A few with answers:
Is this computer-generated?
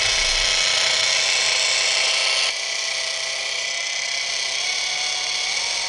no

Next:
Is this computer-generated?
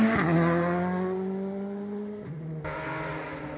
no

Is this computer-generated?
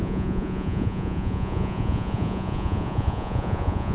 yes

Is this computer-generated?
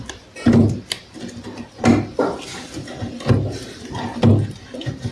no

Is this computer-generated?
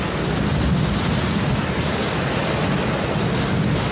no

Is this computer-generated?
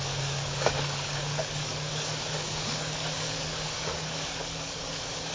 yes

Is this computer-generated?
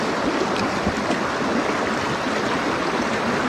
no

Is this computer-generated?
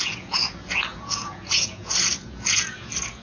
yes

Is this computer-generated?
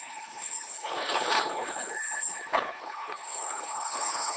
yes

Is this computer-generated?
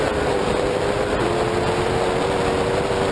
no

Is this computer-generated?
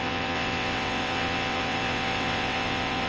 yes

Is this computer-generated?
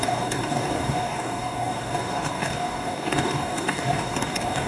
yes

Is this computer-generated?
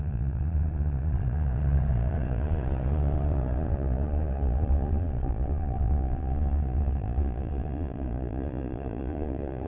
yes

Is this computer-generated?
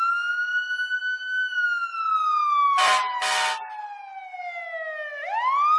no